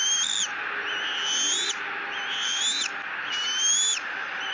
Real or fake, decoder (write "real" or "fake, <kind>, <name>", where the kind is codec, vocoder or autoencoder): real